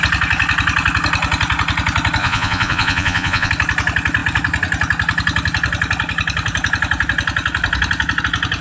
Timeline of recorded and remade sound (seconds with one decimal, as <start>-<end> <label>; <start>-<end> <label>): 0.0-2.2 recorded; 2.2-3.5 remade; 3.5-8.6 recorded

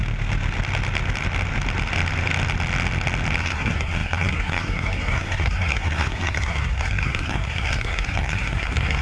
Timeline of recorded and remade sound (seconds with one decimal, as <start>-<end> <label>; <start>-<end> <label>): 0.0-3.4 recorded; 3.4-9.0 remade

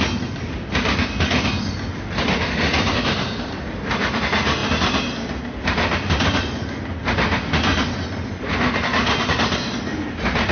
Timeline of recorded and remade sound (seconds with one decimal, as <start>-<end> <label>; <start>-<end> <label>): 0.0-10.5 recorded

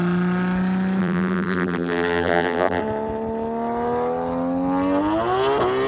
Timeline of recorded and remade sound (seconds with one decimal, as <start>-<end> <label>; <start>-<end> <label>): 0.0-1.0 recorded; 1.0-2.8 remade; 2.8-5.9 recorded

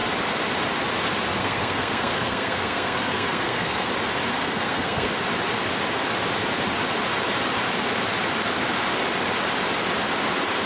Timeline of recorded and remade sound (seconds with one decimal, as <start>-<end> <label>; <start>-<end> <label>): 0.0-1.4 recorded; 1.4-3.9 remade; 3.9-4.4 recorded; 4.4-5.1 remade; 5.1-10.7 recorded

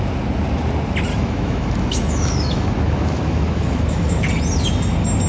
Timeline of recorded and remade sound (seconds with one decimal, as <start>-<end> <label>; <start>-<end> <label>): 0.0-1.1 recorded; 1.1-4.3 remade; 4.3-5.3 recorded

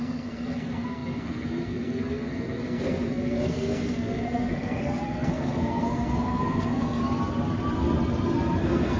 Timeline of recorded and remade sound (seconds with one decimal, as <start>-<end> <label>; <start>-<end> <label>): 0.0-7.0 remade; 7.0-8.6 recorded; 8.6-9.0 remade